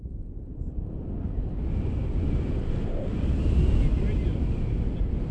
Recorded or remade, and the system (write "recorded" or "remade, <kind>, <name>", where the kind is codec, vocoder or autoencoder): recorded